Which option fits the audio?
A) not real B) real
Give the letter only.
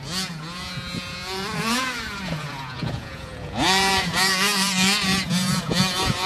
A